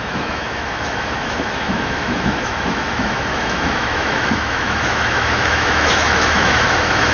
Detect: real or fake fake